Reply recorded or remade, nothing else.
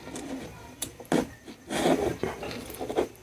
recorded